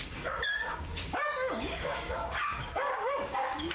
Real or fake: fake